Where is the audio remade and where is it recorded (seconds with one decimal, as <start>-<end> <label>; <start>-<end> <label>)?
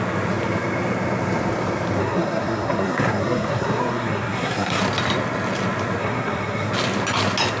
0.0-2.0 recorded; 2.0-4.8 remade; 4.8-6.0 recorded; 6.0-6.7 remade; 6.7-7.6 recorded